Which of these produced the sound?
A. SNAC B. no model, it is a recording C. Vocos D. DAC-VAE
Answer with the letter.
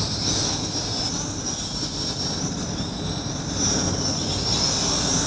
B